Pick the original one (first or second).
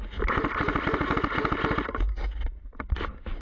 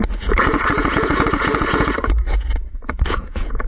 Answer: first